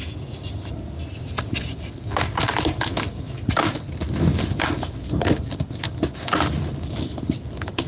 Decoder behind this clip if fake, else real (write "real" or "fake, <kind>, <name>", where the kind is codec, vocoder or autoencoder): real